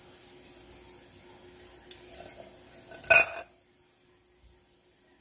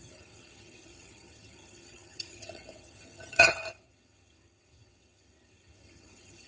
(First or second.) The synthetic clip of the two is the second